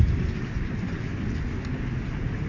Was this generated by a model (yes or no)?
no